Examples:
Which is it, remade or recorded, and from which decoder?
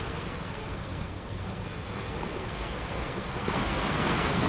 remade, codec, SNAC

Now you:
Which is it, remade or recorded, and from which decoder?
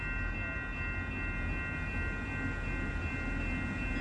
recorded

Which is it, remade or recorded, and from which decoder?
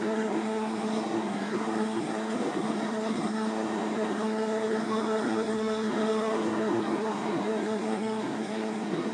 remade, codec, SNAC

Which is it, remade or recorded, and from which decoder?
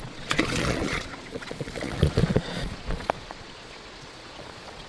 remade, vocoder, Vocos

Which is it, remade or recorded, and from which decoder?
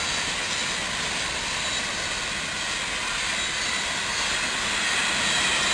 recorded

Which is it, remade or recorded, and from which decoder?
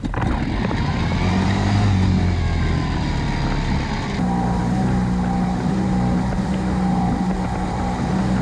recorded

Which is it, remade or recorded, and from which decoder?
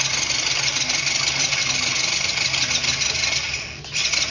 recorded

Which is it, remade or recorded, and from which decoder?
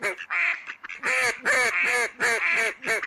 recorded